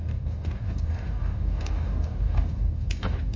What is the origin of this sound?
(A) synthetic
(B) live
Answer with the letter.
A